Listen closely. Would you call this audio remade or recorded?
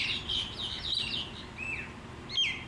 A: recorded